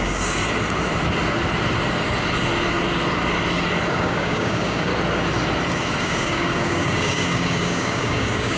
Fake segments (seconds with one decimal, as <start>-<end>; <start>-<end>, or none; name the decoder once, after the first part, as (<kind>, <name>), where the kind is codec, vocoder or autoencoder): 0.0-0.4 (codec, DAC); 3.9-4.9; 6.0-8.6